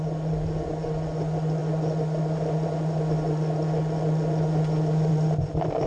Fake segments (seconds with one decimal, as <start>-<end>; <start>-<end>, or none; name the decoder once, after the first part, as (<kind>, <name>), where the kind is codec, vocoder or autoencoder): none